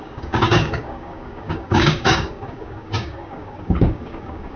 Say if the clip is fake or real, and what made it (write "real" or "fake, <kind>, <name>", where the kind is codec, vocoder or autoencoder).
fake, codec, DAC